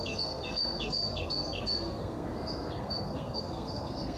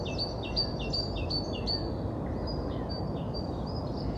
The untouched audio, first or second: second